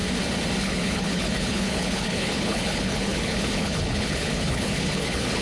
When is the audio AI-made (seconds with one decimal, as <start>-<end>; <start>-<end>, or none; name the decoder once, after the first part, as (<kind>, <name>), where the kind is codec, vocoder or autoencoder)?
0.6-5.4 (codec, HILCodec)